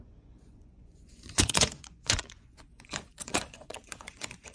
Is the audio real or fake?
fake